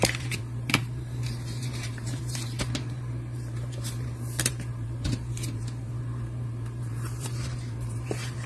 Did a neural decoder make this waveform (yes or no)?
yes